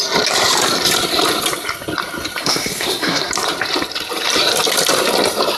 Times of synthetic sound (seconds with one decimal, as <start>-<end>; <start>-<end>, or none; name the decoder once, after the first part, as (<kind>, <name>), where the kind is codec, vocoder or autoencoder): 2.4-3.3 (codec, SNAC)